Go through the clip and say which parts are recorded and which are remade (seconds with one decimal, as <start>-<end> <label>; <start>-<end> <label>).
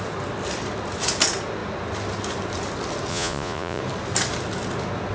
0.0-3.1 recorded; 3.1-3.8 remade; 3.8-5.1 recorded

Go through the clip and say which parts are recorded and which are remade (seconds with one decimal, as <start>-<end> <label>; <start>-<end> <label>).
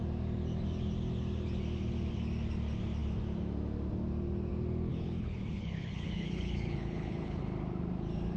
0.0-4.9 recorded; 4.9-7.4 remade; 7.4-8.4 recorded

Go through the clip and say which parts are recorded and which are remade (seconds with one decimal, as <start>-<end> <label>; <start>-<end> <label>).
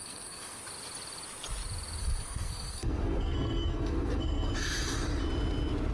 0.0-0.6 remade; 0.6-2.0 recorded; 2.0-4.5 remade; 4.5-5.9 recorded